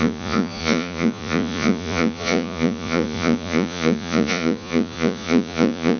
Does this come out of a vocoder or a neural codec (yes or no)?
yes